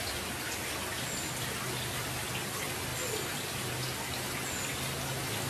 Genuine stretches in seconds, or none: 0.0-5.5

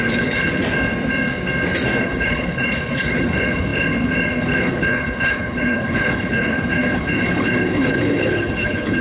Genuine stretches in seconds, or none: 0.6-2.0